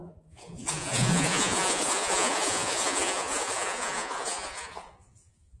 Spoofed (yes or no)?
yes